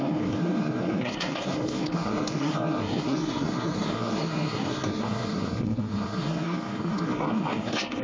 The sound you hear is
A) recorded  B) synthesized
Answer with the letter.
B